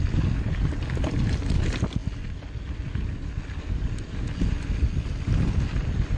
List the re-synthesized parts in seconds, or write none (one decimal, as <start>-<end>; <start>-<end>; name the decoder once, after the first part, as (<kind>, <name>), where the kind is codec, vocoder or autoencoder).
none